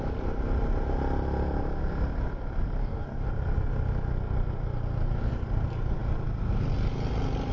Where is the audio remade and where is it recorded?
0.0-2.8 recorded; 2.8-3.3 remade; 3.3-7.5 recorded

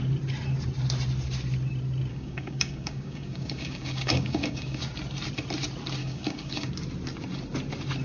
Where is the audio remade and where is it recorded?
0.0-2.1 recorded; 2.1-4.8 remade; 4.8-6.0 recorded; 6.0-6.7 remade; 6.7-8.0 recorded

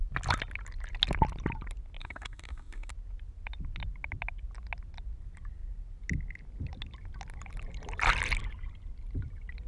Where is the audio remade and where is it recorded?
0.0-2.0 recorded; 2.0-2.9 remade; 2.9-9.7 recorded

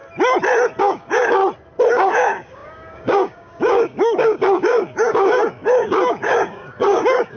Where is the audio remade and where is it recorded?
0.0-0.8 recorded; 0.8-1.4 remade; 1.4-1.9 recorded; 1.9-7.4 remade